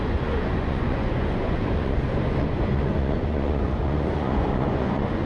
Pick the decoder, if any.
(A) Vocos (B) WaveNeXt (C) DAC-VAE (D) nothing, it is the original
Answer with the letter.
A